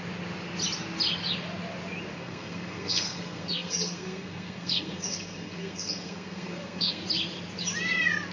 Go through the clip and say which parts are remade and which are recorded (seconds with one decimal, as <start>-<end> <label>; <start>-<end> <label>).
0.0-2.2 recorded; 2.2-7.0 remade; 7.0-8.3 recorded